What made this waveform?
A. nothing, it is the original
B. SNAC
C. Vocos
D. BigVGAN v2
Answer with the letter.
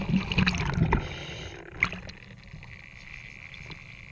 A